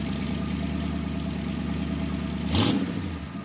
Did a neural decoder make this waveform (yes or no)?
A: no